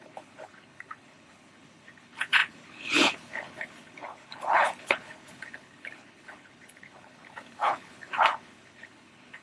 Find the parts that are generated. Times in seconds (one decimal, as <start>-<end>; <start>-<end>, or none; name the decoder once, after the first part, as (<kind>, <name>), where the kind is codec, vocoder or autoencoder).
0.0-9.4 (codec, HILCodec)